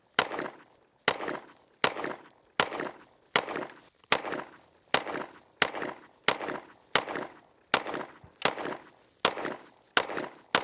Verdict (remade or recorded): recorded